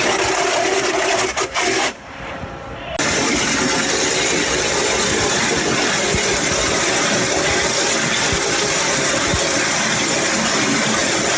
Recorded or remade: recorded